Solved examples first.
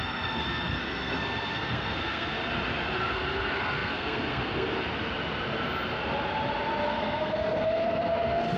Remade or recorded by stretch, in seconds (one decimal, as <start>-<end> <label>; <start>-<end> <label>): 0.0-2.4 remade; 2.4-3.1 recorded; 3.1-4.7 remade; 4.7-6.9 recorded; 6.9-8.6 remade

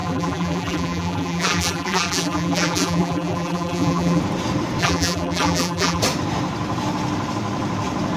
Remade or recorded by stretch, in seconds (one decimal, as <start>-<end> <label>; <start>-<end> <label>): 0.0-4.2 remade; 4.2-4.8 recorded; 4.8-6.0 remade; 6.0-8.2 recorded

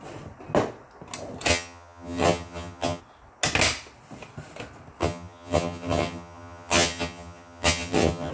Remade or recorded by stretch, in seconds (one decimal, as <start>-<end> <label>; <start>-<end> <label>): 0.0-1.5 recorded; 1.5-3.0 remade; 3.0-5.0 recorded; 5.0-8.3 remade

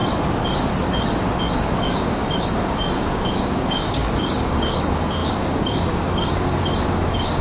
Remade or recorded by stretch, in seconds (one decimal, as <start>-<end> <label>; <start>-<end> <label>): 0.0-1.5 recorded; 1.5-7.4 remade

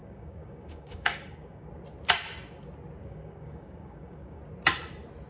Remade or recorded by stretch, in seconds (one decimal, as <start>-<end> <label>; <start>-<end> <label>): 0.0-1.7 remade; 1.7-3.0 recorded; 3.0-4.4 remade; 4.4-5.3 recorded